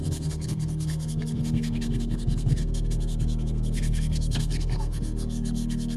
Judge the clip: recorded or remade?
remade